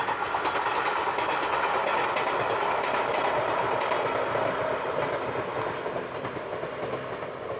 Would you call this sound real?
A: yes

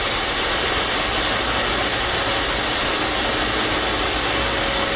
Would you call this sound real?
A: yes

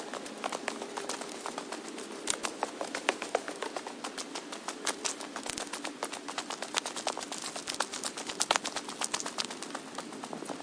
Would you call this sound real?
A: yes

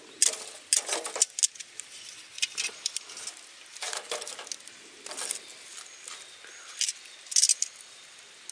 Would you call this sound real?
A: yes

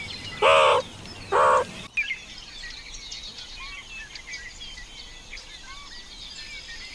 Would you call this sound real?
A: yes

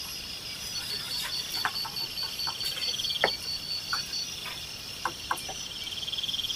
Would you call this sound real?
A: yes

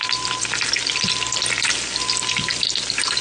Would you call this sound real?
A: yes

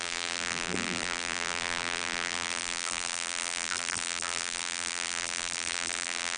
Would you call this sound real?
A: no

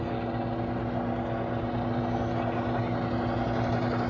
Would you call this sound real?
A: yes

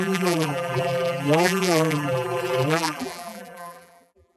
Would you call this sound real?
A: no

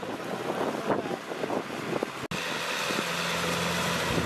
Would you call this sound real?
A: yes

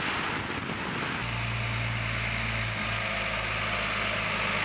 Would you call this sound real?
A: yes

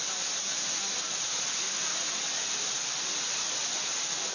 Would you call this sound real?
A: yes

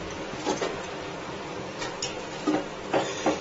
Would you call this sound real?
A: yes